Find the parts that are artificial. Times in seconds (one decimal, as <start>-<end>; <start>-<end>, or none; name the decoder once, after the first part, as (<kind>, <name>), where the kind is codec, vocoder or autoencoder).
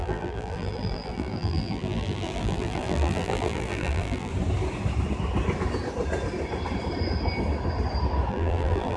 0.0-4.3 (vocoder, BigVGAN v2); 8.3-9.0